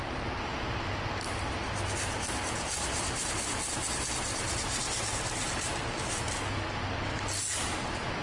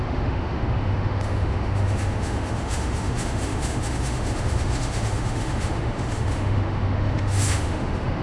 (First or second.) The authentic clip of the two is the first